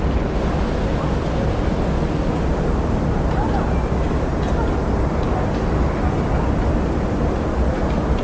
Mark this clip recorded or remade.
recorded